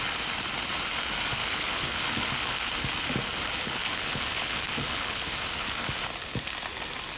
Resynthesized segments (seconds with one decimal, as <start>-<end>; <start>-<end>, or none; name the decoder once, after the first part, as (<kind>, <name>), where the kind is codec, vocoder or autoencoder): 1.4-2.7 (codec, HILCodec); 3.6-5.3